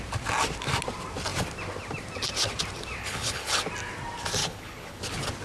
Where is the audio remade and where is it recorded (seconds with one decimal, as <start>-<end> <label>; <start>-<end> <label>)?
0.0-3.0 recorded; 3.0-3.6 remade; 3.6-4.4 recorded; 4.4-5.0 remade; 5.0-5.4 recorded